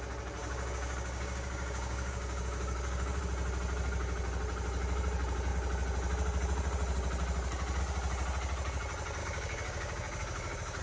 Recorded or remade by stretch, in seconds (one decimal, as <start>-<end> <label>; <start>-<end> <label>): 0.0-0.4 recorded; 0.4-3.2 remade; 3.2-9.2 recorded; 9.2-10.8 remade